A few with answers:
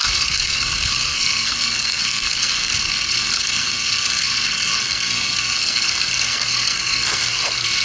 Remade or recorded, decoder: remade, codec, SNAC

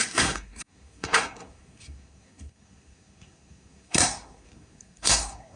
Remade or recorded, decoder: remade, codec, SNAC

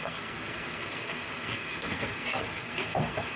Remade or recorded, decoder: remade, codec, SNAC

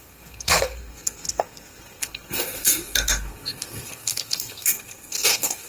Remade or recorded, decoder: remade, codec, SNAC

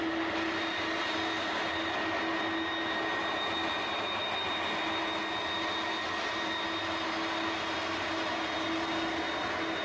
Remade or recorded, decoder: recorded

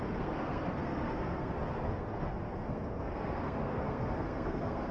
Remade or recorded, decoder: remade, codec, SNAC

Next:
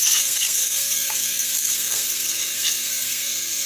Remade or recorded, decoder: remade, codec, SNAC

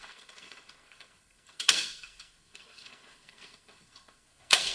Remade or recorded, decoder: remade, codec, SNAC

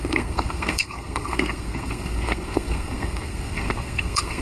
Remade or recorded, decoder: remade, codec, SNAC